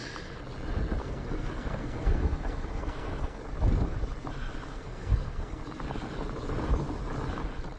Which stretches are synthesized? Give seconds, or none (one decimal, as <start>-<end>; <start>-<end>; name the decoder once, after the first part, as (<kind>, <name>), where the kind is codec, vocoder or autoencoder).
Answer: 1.0-3.4 (codec, SNAC); 4.7-5.6